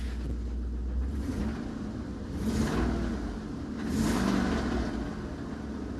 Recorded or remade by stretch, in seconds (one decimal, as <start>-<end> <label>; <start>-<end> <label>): 0.0-6.0 recorded

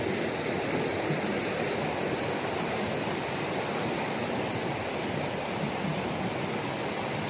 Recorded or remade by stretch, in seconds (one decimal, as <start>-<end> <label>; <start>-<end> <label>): 0.0-7.3 recorded